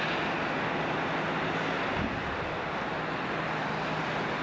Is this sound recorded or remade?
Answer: recorded